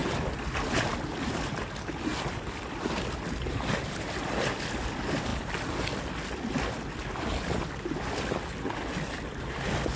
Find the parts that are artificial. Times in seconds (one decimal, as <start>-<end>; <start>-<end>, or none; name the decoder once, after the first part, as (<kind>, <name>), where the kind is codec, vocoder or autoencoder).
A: none

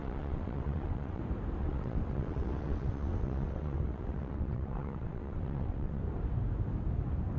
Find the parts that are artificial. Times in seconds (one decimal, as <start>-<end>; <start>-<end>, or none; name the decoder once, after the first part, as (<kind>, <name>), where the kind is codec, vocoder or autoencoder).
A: 0.0-1.2 (vocoder, WaveNeXt); 1.6-6.0

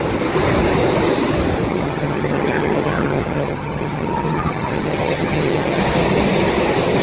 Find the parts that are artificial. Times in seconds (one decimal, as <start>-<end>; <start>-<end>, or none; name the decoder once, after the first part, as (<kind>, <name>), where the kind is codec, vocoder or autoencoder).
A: 1.7-5.8 (vocoder, HiFi-GAN)